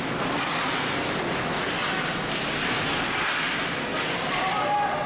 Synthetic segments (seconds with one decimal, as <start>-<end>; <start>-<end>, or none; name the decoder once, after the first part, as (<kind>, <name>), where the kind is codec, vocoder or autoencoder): none